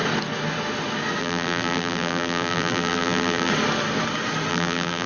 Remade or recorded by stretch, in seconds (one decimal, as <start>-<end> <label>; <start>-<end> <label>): 0.0-1.2 recorded; 1.2-3.5 remade; 3.5-4.5 recorded; 4.5-5.1 remade